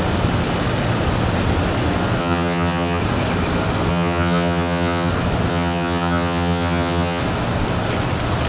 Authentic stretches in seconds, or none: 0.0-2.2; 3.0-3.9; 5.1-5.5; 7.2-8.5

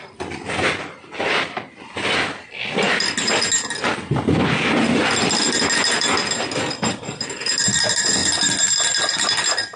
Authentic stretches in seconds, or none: 0.0-9.8

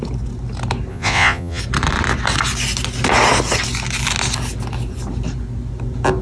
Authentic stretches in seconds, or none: 0.0-0.9; 1.6-6.2

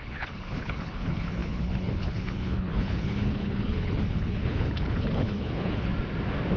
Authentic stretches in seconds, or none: 5.9-6.6